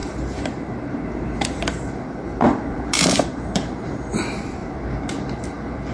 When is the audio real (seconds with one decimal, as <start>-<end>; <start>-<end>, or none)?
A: none